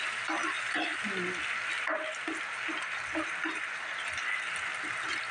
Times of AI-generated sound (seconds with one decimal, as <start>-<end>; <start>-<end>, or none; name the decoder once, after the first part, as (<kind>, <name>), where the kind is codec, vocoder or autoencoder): none